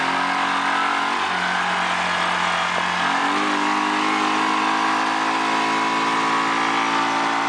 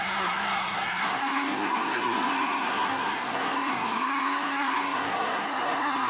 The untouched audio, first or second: first